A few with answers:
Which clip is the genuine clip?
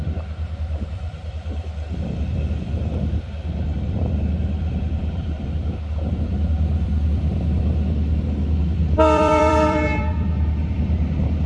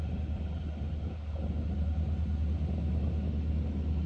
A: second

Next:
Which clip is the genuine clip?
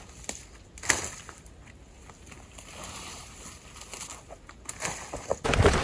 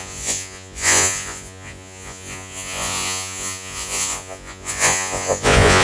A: first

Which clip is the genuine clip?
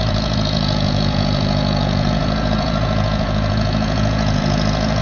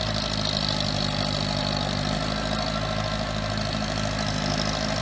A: second